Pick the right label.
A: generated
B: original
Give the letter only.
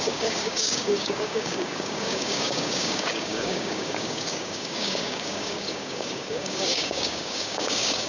A